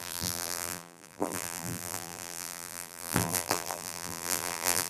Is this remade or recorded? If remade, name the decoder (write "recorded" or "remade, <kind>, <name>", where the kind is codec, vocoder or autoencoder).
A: remade, vocoder, BigVGAN v2